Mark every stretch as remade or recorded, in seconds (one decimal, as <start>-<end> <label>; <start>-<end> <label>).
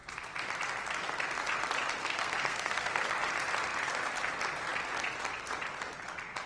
0.0-2.0 recorded; 2.0-3.1 remade; 3.1-6.5 recorded